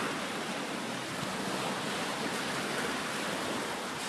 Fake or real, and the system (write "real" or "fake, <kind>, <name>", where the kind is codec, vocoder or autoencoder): real